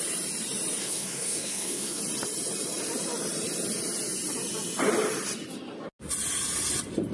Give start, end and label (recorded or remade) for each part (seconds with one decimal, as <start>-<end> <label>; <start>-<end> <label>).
0.0-0.8 recorded; 0.8-2.0 remade; 2.0-7.1 recorded

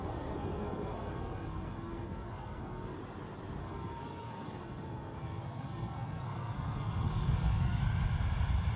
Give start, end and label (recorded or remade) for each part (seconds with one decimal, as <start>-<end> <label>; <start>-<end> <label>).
0.0-3.0 remade; 3.0-3.6 recorded; 3.6-7.8 remade; 7.8-8.8 recorded

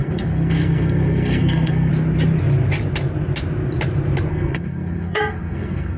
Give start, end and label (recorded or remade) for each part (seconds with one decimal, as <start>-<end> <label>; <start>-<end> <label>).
0.0-1.9 remade; 1.9-4.3 recorded; 4.3-6.0 remade

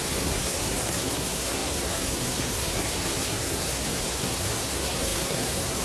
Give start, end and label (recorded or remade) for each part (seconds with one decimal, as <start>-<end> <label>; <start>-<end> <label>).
0.0-5.8 remade